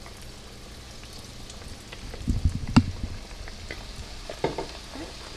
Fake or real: real